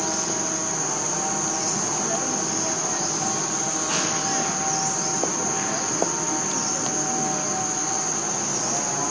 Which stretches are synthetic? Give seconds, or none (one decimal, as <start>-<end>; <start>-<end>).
none